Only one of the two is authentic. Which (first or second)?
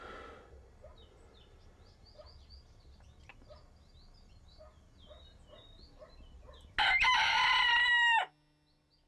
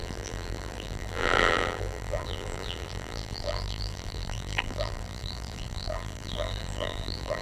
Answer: first